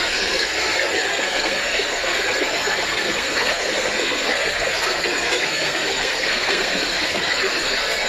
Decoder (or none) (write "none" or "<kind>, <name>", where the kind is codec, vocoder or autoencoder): codec, SNAC